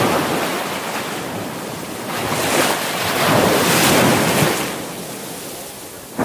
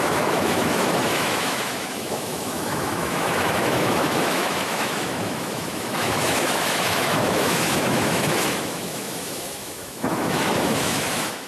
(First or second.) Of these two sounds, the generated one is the second